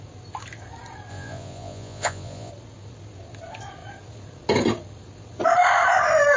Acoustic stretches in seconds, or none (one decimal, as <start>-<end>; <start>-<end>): 0.0-1.1; 2.5-6.4